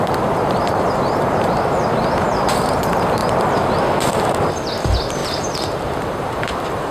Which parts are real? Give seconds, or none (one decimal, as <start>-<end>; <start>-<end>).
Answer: 3.2-4.2; 5.2-5.8